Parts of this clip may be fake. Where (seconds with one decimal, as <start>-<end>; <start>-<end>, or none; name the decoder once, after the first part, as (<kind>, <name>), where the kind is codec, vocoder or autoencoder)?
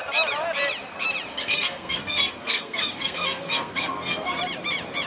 1.3-4.4 (codec, SNAC)